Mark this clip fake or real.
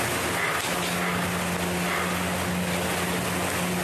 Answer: real